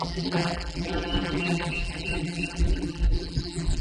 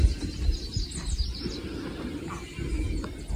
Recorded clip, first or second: second